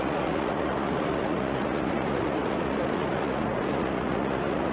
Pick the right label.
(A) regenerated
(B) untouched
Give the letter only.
A